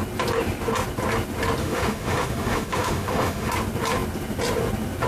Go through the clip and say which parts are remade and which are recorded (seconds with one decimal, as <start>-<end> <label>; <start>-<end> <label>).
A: 0.0-1.6 recorded; 1.6-3.5 remade; 3.5-5.1 recorded